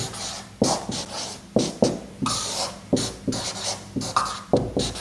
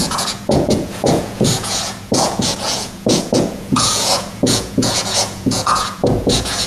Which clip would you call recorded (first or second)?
first